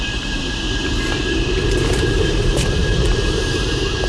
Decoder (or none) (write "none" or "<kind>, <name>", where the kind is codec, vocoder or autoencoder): vocoder, BigVGAN v2